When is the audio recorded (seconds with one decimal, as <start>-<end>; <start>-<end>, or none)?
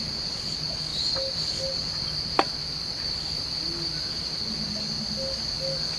0.0-6.0